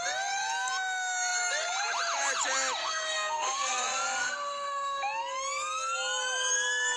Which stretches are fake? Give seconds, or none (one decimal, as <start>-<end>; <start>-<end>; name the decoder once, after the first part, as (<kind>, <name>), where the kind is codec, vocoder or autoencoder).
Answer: 2.8-3.8 (codec, SNAC); 4.2-5.0